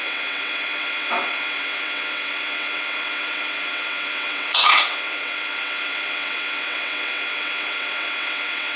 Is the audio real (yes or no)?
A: no